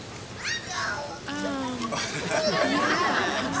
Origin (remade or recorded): recorded